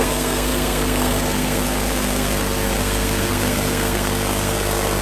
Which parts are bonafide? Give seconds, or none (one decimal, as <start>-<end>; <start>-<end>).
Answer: none